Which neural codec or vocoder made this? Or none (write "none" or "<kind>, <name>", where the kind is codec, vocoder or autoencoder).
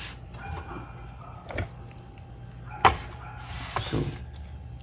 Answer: none